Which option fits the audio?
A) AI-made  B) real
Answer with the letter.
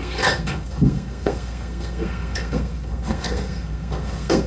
A